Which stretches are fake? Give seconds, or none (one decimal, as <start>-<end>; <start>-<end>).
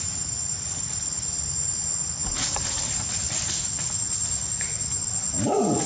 none